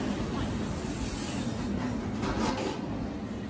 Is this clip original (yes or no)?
yes